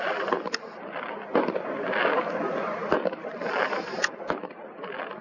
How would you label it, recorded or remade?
recorded